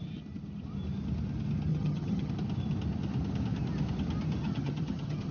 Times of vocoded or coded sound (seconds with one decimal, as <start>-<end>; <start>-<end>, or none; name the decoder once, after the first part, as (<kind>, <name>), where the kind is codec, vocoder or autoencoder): 1.7-2.3 (vocoder, HiFi-GAN); 4.4-5.3